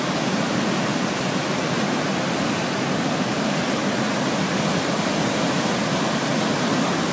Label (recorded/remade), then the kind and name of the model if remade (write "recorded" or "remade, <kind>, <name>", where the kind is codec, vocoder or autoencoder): recorded